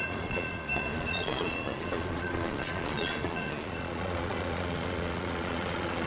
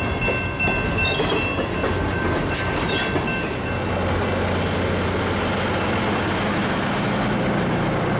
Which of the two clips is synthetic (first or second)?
first